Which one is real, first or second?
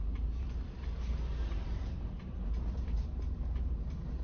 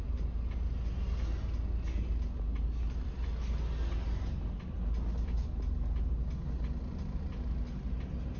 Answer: second